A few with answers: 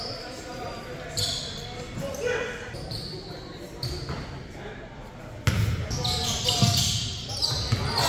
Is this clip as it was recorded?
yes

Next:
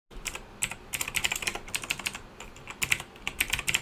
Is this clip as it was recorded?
yes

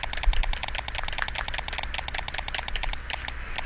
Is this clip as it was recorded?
yes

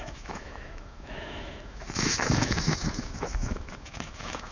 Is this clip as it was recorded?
no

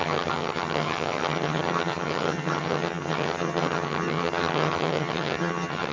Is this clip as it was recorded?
no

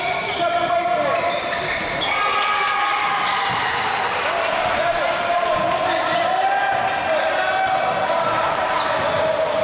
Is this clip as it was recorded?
yes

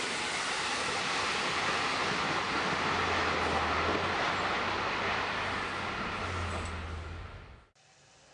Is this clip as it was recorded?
yes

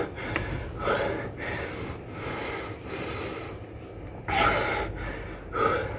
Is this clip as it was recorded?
yes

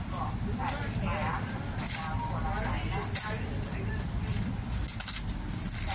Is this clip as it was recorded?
yes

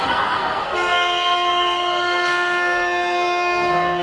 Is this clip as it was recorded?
no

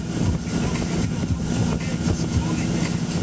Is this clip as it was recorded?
yes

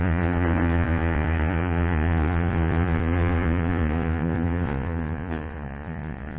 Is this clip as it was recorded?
no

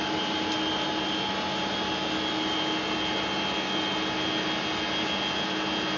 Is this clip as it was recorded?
yes